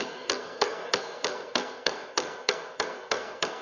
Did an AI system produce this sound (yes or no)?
yes